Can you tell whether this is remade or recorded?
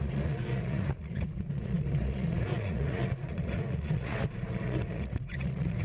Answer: remade